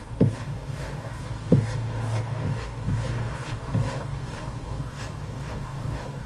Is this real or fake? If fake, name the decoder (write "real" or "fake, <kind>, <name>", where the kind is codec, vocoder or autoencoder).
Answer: fake, codec, DAC